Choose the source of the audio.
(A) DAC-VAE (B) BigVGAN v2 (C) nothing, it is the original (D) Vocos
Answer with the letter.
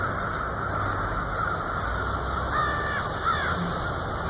C